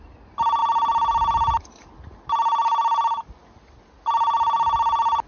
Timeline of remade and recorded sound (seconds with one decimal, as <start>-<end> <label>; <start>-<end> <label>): 0.0-5.3 recorded